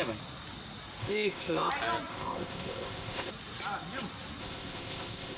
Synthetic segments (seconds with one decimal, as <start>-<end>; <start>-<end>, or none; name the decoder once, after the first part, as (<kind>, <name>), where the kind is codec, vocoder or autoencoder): 1.0-1.7 (codec, ZipCodec); 2.1-3.3; 4.4-5.4